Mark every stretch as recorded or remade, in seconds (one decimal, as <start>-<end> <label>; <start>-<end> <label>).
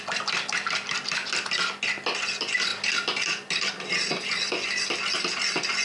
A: 0.0-5.8 recorded